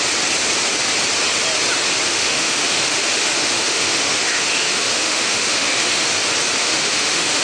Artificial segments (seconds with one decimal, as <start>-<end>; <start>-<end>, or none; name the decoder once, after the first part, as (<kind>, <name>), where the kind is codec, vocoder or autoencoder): 2.1-6.1 (autoencoder, DAC-VAE); 6.6-7.4